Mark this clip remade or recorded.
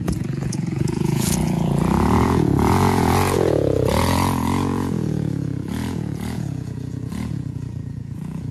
remade